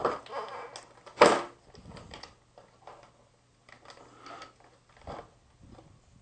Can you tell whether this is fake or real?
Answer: real